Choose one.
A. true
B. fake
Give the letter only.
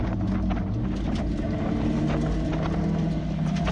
A